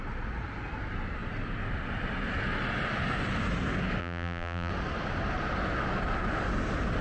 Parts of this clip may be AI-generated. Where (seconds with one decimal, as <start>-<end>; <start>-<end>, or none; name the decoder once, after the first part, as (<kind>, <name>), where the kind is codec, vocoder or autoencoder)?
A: 4.0-4.7 (vocoder, BigVGAN v2)